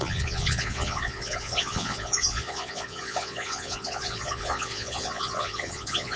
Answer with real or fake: fake